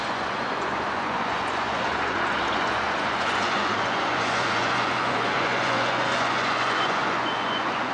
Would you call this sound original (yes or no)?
no